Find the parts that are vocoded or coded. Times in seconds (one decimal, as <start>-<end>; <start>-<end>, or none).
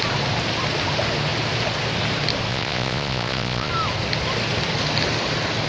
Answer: 2.5-3.7